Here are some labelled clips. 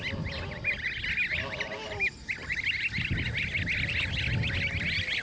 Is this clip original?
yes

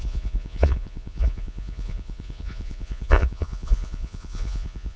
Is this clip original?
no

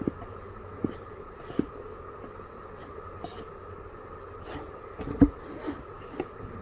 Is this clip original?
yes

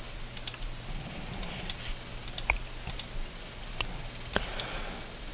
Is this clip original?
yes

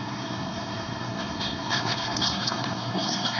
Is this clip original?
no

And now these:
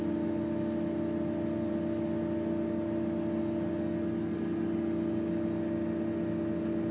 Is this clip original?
yes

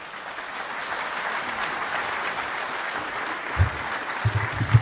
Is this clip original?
yes